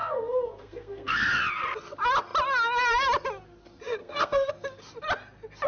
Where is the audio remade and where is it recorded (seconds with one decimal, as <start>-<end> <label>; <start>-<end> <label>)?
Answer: 0.0-1.3 remade; 1.3-4.0 recorded; 4.0-4.5 remade; 4.5-5.7 recorded